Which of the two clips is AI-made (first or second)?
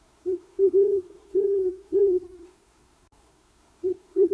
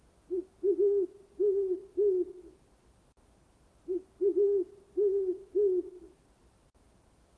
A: first